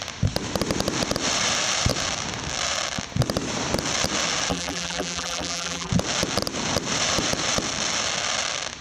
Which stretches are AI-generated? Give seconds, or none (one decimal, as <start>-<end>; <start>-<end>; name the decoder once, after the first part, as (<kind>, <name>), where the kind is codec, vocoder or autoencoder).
4.5-5.9 (vocoder, BigVGAN v2)